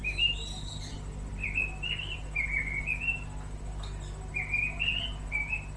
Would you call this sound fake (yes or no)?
no